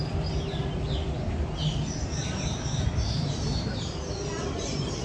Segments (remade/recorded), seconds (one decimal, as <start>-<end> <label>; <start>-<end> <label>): 0.0-2.2 recorded; 2.2-3.9 remade; 3.9-5.0 recorded